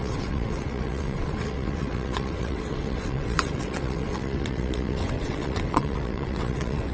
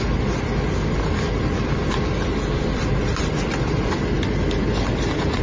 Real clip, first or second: second